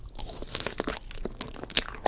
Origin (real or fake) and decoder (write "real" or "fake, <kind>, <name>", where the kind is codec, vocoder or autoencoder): real